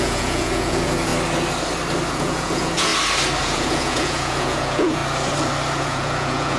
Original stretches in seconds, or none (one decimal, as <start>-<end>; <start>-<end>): 1.1-2.1; 2.9-3.4; 5.0-5.8